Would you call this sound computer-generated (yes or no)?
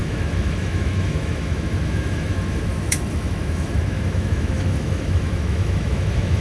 yes